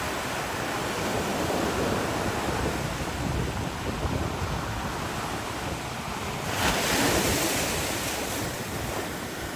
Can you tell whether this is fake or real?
real